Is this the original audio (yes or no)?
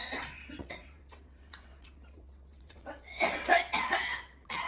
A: no